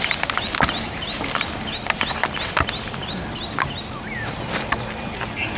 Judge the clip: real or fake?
real